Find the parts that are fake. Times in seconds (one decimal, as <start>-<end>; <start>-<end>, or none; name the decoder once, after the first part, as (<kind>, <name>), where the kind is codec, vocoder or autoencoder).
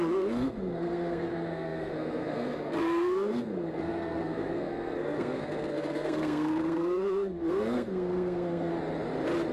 0.0-8.7 (codec, SNAC)